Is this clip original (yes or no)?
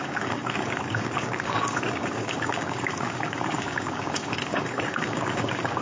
no